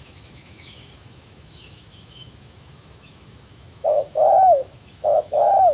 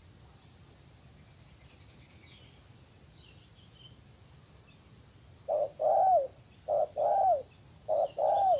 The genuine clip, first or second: second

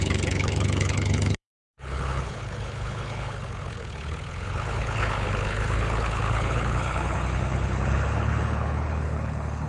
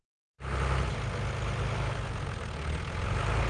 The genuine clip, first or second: second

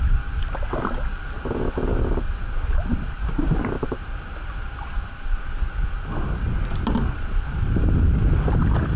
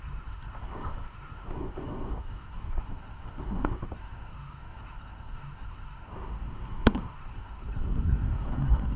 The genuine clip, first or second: first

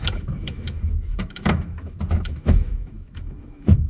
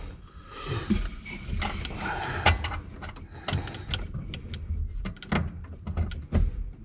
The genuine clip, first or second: second